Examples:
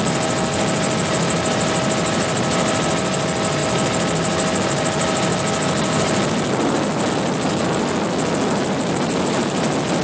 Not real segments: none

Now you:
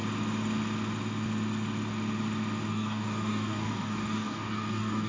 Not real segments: 2.7-5.1